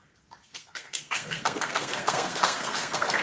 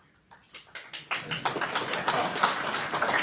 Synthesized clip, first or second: first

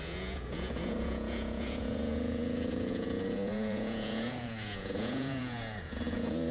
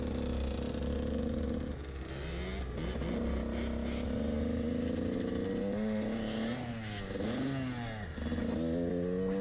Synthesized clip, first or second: first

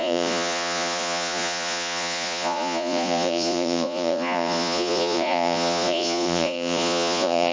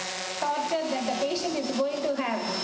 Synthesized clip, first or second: first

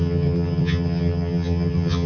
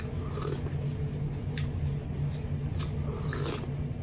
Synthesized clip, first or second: first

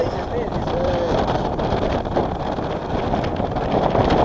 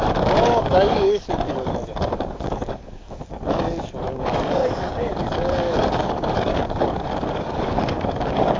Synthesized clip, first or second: second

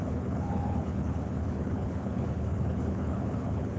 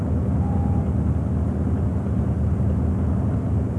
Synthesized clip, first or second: first